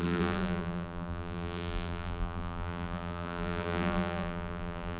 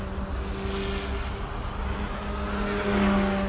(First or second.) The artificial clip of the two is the first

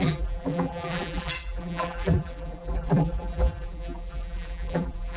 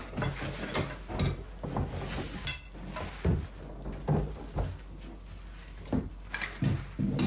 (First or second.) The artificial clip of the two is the first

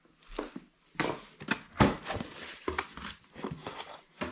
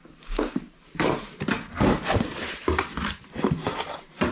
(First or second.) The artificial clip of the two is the second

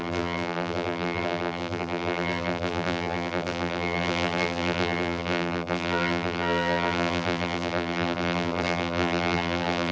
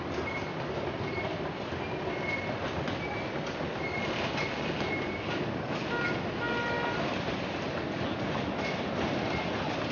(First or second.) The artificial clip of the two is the first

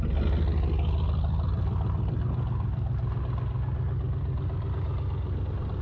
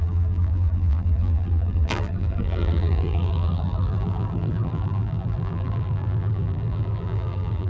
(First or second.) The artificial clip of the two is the second